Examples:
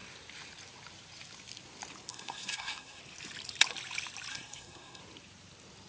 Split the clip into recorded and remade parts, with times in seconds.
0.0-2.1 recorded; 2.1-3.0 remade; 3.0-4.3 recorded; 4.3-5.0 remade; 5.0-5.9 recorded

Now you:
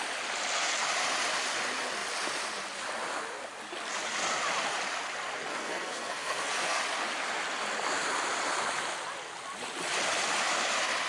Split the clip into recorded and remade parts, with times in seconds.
0.0-5.5 recorded; 5.5-6.8 remade; 6.8-11.1 recorded

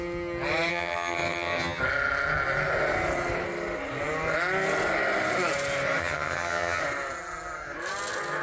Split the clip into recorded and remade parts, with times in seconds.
0.0-0.7 recorded; 0.7-1.8 remade; 1.8-6.0 recorded; 6.0-6.8 remade; 6.8-8.4 recorded

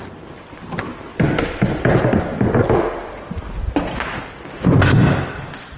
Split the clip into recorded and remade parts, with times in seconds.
0.0-1.1 remade; 1.1-4.6 recorded; 4.6-5.8 remade